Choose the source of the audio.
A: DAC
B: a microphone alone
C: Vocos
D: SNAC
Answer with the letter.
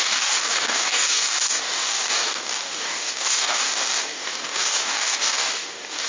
A